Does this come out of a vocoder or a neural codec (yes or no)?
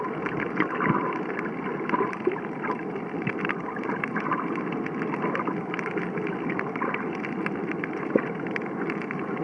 no